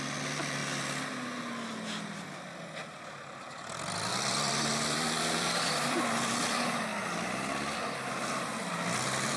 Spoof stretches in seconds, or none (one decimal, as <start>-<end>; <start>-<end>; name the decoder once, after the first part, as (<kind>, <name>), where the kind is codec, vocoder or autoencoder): 0.0-0.6 (vocoder, BigVGAN v2); 2.9-6.9; 8.1-9.4